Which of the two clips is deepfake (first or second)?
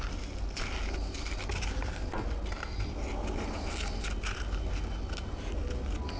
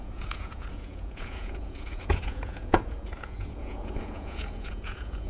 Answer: second